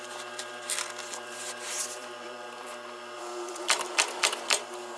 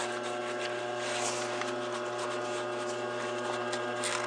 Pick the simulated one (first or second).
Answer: first